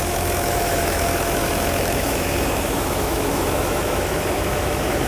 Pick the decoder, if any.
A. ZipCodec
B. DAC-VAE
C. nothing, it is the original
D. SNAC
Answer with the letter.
B